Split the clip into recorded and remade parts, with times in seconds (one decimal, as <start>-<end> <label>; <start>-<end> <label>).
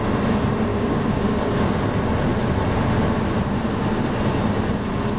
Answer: 0.0-0.7 recorded; 0.7-1.6 remade; 1.6-5.2 recorded